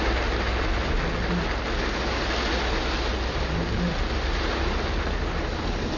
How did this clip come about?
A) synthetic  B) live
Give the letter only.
B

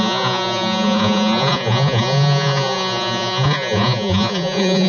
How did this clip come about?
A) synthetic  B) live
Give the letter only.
A